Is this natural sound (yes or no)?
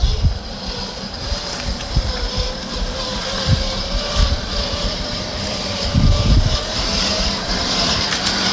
no